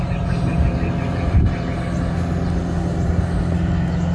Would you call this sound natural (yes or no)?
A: yes